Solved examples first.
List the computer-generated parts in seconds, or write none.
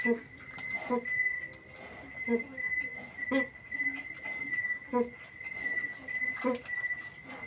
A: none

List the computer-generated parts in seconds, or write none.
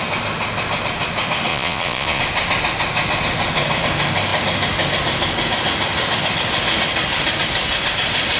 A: 1.5-2.2 (vocoder, Vocos)